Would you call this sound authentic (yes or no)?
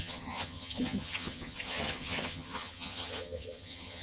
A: no